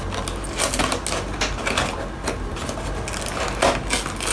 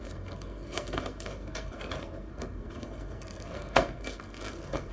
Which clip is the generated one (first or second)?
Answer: second